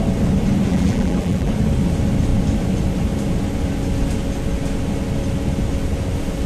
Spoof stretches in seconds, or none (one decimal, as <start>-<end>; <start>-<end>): 0.7-1.5